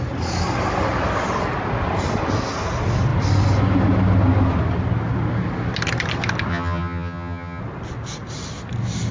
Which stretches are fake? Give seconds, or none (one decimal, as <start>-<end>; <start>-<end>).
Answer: 6.5-7.6